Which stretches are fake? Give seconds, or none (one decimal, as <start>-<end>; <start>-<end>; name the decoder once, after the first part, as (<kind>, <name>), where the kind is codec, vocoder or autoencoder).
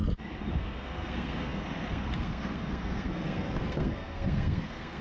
0.5-5.0 (codec, SNAC)